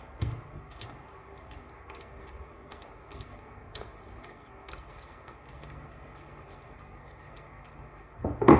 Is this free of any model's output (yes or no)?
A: no